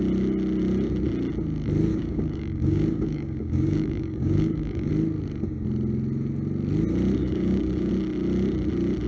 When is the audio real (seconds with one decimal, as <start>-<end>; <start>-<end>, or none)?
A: 0.0-1.9; 4.9-7.2; 7.9-9.1